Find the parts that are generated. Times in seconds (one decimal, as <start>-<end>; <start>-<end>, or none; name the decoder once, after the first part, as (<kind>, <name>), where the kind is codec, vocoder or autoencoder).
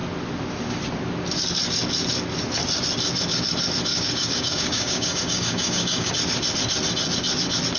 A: 3.9-6.1 (codec, DAC)